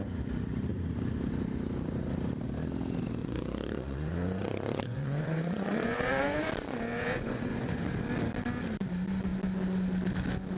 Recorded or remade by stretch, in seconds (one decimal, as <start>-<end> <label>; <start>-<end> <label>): 0.0-3.2 recorded; 3.2-6.5 remade; 6.5-6.9 recorded; 6.9-7.8 remade; 7.8-10.6 recorded